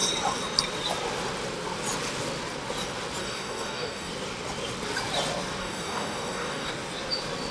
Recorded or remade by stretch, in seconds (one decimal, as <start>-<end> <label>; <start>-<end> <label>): 0.0-3.2 recorded; 3.2-4.1 remade; 4.1-5.6 recorded; 5.6-6.7 remade; 6.7-7.5 recorded